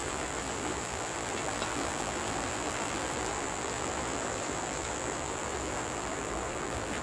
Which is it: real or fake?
fake